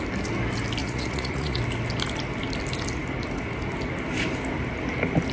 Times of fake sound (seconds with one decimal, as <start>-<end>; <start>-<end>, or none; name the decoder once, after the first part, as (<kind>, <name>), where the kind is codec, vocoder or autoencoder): 0.8-1.6 (vocoder, Vocos)